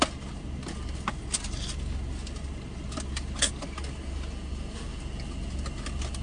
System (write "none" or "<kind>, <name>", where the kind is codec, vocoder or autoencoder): none